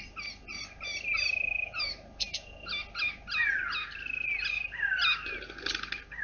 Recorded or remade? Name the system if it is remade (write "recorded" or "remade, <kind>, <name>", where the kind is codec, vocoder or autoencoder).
recorded